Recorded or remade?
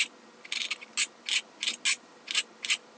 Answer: recorded